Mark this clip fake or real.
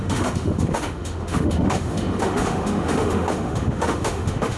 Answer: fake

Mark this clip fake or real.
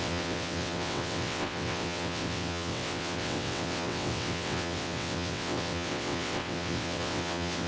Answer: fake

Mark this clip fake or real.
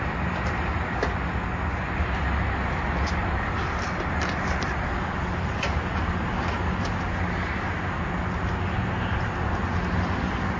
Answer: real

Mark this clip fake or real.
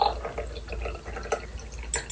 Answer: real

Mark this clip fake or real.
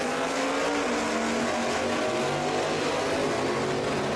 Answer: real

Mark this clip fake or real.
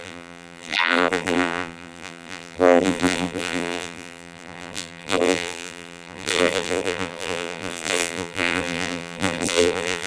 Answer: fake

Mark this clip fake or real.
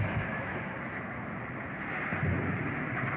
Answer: real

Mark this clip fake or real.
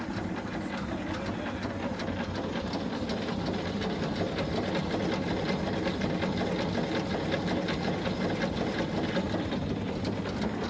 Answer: real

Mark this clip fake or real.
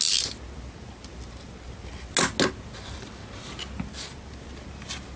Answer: real